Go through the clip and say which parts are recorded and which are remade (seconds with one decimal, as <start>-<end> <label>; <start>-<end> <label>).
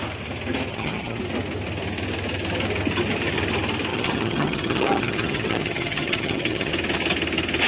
0.0-0.7 recorded; 0.7-1.2 remade; 1.2-3.9 recorded; 3.9-6.7 remade; 6.7-7.7 recorded